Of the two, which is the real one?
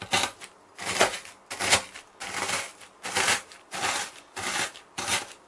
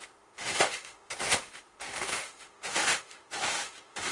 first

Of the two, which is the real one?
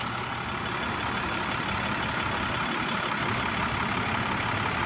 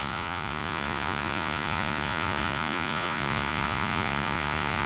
first